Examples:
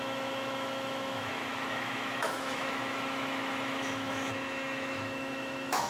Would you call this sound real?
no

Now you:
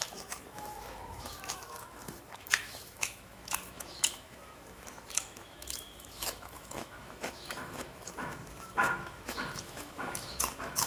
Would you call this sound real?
no